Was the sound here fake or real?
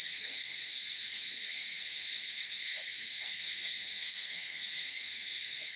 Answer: fake